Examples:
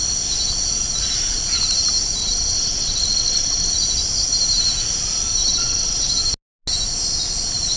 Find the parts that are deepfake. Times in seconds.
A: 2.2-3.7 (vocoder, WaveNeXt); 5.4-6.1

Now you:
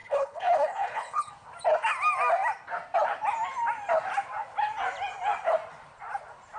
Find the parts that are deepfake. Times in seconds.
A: 0.0-1.3 (codec, HILCodec)

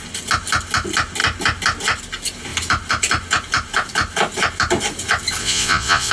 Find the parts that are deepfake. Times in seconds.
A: 5.4-6.1 (vocoder, Vocos)

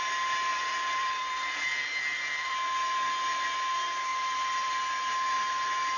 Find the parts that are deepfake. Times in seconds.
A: 0.5-2.5 (vocoder, BigVGAN v2); 4.1-5.1

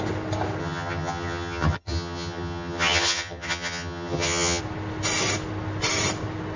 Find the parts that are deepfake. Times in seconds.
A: 0.6-4.6 (vocoder, HiFi-GAN)

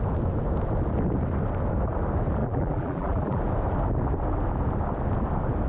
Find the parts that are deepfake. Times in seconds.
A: 2.4-3.4 (vocoder, BigVGAN v2)

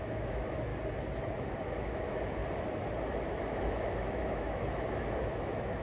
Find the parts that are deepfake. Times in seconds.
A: 0.0-0.7 (autoencoder, DAC-VAE); 1.2-2.4; 3.7-5.8